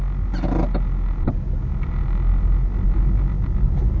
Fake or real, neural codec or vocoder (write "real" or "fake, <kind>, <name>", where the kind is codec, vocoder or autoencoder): real